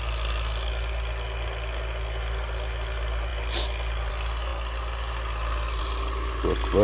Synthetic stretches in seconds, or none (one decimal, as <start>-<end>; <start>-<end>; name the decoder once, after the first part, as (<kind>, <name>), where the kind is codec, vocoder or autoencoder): none